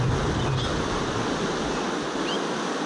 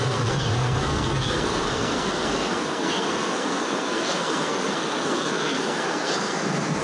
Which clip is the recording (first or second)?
first